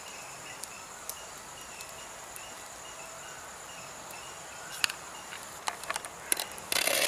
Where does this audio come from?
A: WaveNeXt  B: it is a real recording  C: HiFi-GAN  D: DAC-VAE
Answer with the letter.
B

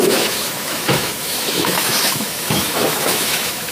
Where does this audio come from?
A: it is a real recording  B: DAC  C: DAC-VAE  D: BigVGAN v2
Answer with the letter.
C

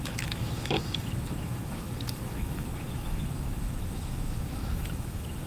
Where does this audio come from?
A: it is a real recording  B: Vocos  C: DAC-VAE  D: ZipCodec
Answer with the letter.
C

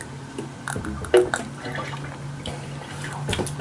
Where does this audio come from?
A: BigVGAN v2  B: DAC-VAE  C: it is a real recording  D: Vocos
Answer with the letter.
C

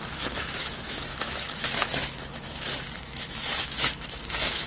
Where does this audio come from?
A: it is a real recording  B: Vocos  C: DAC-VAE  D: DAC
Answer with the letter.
C